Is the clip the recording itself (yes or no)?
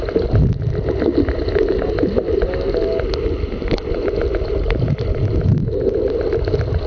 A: yes